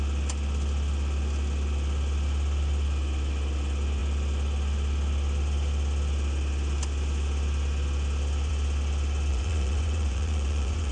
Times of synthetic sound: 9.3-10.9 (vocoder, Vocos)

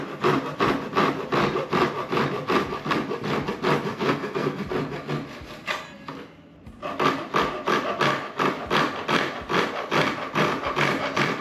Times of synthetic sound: 3.9-4.6 (codec, SNAC)

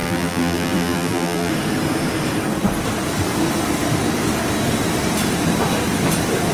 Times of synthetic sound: 0.0-1.5 (vocoder, BigVGAN v2)

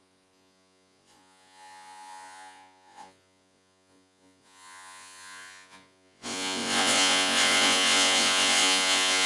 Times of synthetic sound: 0.0-9.3 (vocoder, Vocos)

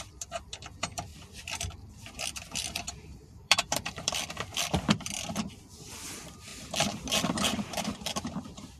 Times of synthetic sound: 0.0-8.8 (vocoder, BigVGAN v2)

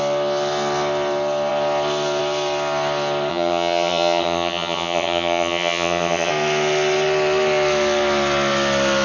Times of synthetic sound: 3.3-6.3 (vocoder, HiFi-GAN)

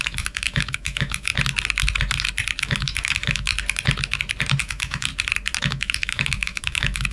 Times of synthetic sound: 0.0-1.3 (autoencoder, DAC-VAE); 2.6-3.5; 4.6-5.1; 5.6-7.1